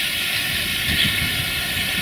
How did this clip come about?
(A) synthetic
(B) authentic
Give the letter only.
B